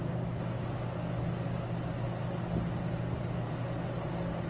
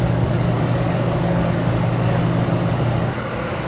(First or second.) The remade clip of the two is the second